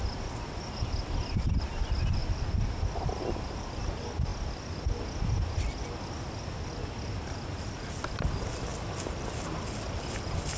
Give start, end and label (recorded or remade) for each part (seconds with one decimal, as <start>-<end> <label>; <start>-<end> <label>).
0.0-10.6 recorded